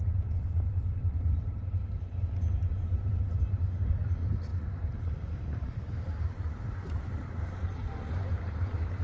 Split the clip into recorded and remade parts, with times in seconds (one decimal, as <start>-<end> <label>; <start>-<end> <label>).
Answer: 0.0-4.5 remade; 4.5-5.5 recorded; 5.5-9.0 remade